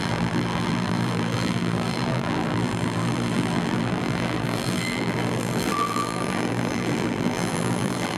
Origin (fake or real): fake